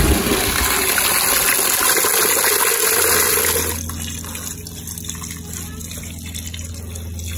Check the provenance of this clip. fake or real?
real